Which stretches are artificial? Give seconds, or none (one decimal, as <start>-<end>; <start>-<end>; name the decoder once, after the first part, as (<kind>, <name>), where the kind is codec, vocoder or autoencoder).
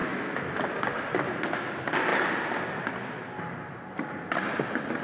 0.0-0.6 (autoencoder, DAC-VAE)